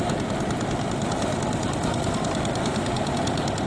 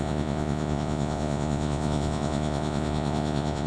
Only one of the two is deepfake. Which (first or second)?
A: second